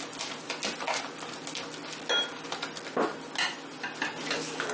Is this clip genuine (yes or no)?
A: yes